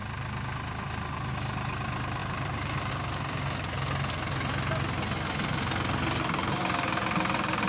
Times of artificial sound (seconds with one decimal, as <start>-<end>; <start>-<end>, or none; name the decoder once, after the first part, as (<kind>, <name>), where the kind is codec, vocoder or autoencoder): 2.2-2.9 (vocoder, BigVGAN v2)